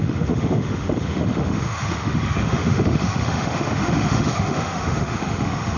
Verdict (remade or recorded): remade